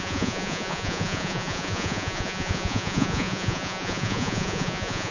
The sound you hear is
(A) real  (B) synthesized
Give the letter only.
B